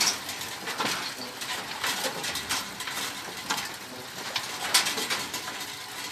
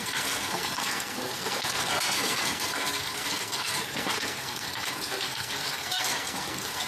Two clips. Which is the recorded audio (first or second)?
first